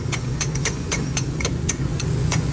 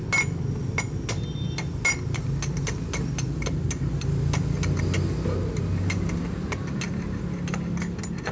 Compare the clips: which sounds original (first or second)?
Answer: second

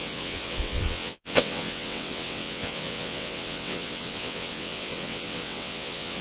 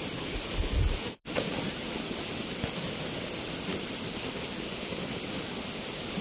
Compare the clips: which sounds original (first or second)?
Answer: second